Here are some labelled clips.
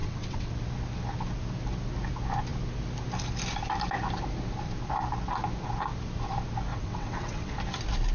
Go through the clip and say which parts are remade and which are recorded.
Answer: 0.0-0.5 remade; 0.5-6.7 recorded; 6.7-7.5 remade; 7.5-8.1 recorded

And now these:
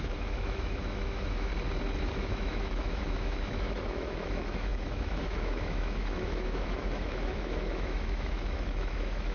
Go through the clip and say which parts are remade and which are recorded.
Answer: 0.0-1.5 remade; 1.5-2.0 recorded; 2.0-9.3 remade

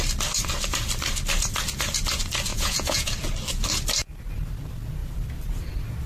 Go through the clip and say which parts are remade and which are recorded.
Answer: 0.0-2.5 recorded; 2.5-3.1 remade; 3.1-6.1 recorded

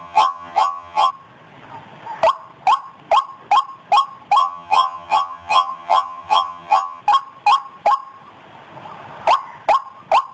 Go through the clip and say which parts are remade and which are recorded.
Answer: 0.0-1.1 remade; 1.1-4.4 recorded; 4.4-7.0 remade; 7.0-10.3 recorded

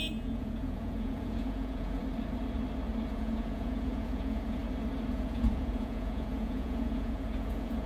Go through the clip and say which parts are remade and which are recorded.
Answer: 0.0-2.0 remade; 2.0-3.1 recorded; 3.1-4.6 remade; 4.6-5.1 recorded; 5.1-7.9 remade

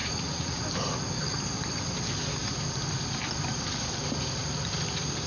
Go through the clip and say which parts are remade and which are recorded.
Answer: 0.0-0.6 remade; 0.6-5.3 recorded